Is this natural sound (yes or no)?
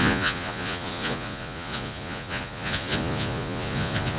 no